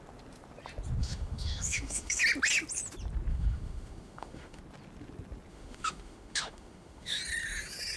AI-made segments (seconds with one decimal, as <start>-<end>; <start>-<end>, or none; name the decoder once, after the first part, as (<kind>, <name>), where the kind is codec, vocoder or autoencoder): 1.0-2.2 (autoencoder, DAC-VAE); 3.3-4.6; 5.5-7.2